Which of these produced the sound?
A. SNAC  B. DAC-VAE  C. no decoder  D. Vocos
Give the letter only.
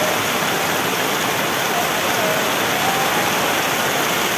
C